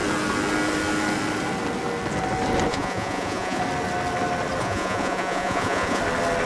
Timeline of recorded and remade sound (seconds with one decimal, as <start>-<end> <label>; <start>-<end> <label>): 0.0-2.7 recorded; 2.7-3.6 remade; 3.6-4.6 recorded; 4.6-6.0 remade; 6.0-6.5 recorded